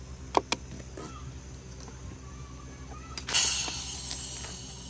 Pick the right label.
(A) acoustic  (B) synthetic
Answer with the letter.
A